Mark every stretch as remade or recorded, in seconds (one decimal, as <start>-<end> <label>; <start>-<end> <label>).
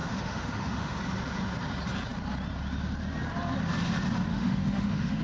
0.0-1.0 remade; 1.0-4.3 recorded; 4.3-5.2 remade